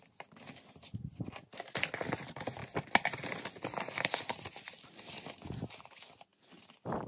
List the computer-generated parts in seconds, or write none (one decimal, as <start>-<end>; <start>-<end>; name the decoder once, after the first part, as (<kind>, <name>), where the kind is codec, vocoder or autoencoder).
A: none